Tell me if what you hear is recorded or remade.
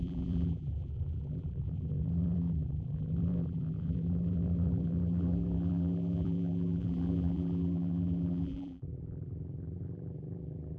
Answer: remade